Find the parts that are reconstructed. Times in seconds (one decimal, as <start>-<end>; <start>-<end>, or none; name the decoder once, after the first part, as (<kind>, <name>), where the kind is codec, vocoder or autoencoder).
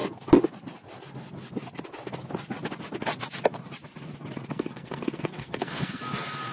4.5-6.0 (codec, SNAC)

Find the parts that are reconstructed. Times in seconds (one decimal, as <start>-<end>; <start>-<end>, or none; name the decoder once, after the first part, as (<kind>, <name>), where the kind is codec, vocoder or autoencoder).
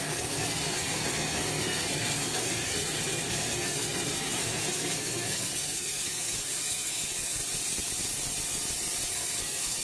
0.0-7.4 (codec, SNAC); 9.1-9.8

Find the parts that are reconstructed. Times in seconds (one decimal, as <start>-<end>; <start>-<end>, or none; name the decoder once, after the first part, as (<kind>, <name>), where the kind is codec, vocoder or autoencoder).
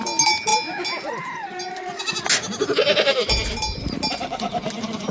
none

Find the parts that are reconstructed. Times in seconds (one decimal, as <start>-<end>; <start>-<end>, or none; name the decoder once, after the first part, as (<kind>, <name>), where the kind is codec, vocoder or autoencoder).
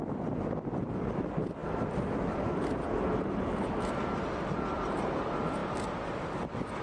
none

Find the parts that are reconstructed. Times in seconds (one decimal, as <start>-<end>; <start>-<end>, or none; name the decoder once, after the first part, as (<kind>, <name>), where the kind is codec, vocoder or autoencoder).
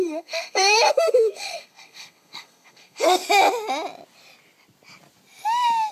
0.0-3.2 (codec, SNAC)